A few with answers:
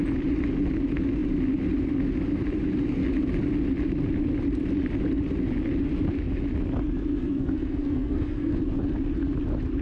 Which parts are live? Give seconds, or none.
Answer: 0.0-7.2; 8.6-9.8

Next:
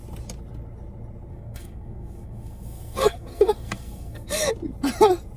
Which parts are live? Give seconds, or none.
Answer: 0.0-1.3; 4.5-5.4

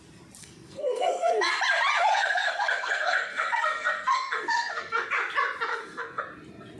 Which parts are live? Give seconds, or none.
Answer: 0.0-0.4; 1.5-2.1; 5.1-5.7; 6.2-6.8

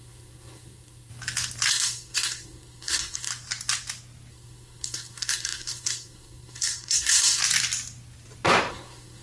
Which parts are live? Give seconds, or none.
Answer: 1.1-1.7; 3.3-4.3; 7.4-8.7